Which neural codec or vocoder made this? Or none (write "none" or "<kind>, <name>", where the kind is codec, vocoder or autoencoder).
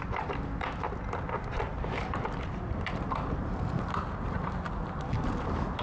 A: vocoder, BigVGAN v2